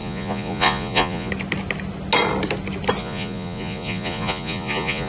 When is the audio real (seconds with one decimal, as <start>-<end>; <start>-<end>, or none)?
1.3-3.0